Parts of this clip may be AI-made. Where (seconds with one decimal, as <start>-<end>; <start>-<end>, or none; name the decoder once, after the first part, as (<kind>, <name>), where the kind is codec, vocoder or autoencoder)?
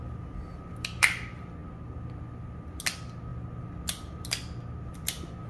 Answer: none